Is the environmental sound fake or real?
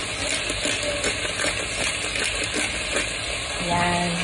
real